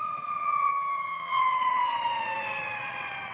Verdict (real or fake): fake